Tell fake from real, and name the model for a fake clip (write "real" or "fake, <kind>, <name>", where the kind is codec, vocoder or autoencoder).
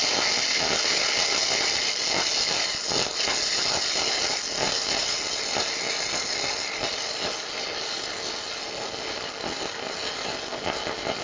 real